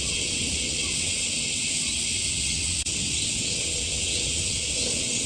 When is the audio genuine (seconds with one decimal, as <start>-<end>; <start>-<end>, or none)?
none